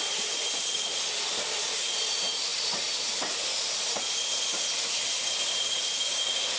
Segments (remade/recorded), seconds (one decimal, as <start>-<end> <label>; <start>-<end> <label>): 0.0-6.6 recorded